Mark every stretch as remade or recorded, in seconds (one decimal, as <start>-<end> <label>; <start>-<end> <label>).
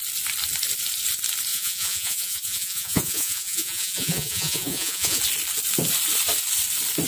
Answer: 0.0-1.5 recorded; 1.5-5.2 remade; 5.2-7.1 recorded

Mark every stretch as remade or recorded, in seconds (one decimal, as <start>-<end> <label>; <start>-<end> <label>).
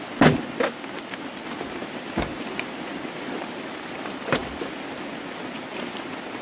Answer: 0.0-6.4 recorded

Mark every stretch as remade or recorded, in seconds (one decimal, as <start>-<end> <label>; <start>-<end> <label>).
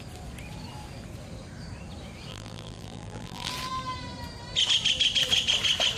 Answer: 0.0-2.3 recorded; 2.3-3.5 remade; 3.5-6.0 recorded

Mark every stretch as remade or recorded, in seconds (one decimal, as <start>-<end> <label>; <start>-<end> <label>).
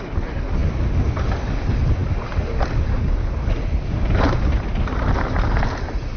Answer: 0.0-6.2 recorded